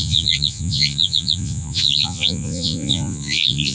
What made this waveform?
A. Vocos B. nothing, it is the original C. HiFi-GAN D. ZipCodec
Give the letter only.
A